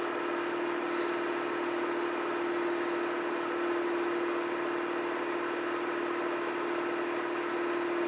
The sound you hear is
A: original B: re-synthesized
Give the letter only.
A